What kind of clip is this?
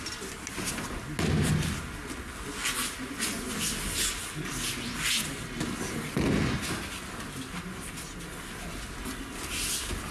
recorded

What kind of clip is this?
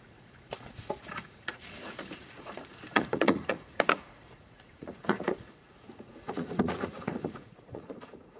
remade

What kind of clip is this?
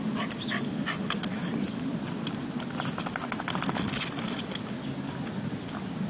recorded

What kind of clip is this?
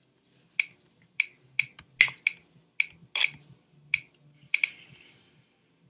recorded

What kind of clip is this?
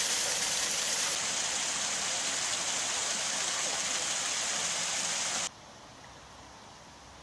recorded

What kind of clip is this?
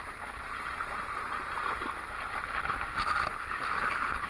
recorded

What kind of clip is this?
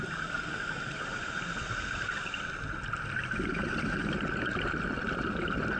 recorded